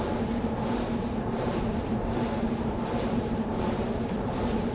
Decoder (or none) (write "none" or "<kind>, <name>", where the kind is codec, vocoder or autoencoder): vocoder, BigVGAN v2